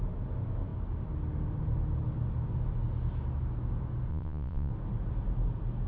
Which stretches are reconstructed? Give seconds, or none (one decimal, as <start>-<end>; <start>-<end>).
4.1-4.7